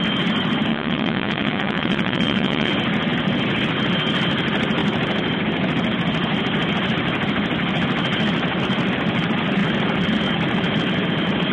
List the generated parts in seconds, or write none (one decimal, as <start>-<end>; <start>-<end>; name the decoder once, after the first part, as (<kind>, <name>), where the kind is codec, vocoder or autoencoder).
0.7-2.7 (vocoder, WaveNeXt)